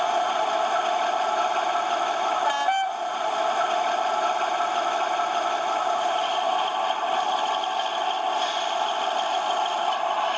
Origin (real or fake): real